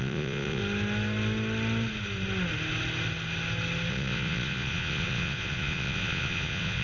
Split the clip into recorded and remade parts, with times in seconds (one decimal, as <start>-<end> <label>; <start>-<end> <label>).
0.0-0.6 remade; 0.6-3.9 recorded; 3.9-6.8 remade